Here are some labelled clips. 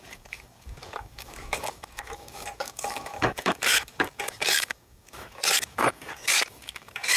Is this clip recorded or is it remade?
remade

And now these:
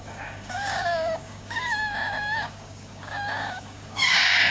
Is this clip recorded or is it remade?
remade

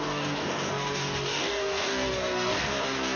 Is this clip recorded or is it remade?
remade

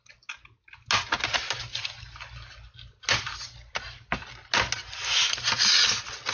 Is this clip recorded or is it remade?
recorded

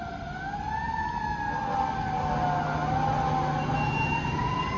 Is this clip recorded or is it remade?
recorded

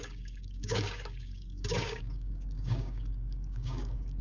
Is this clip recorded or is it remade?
remade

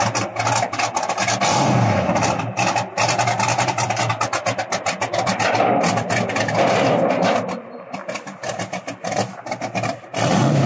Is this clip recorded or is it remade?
recorded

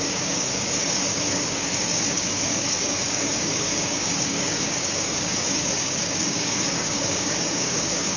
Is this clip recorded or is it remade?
remade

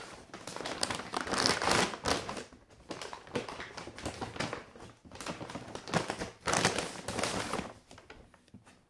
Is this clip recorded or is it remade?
recorded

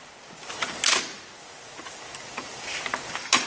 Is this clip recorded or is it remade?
recorded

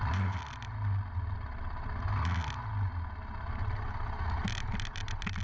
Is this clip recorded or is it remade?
recorded